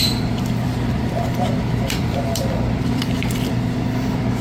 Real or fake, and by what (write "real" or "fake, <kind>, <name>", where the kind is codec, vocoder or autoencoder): fake, vocoder, BigVGAN v2